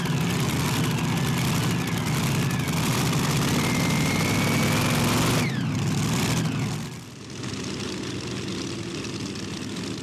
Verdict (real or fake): real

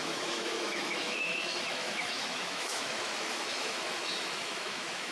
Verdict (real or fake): fake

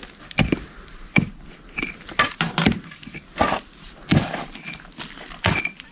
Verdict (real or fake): real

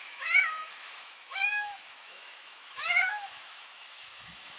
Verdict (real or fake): fake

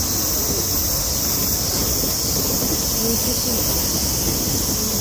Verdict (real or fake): real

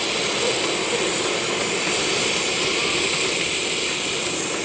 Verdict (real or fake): real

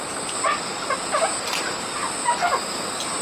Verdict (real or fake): real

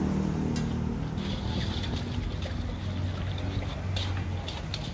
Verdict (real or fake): real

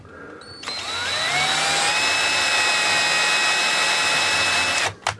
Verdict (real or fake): real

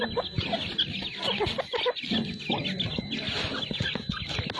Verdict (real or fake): real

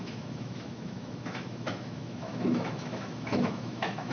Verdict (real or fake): fake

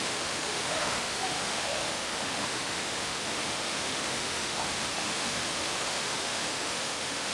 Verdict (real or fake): fake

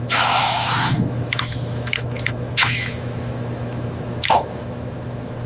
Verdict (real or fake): fake